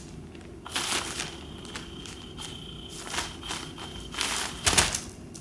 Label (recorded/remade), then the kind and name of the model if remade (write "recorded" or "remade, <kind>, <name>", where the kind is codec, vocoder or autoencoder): recorded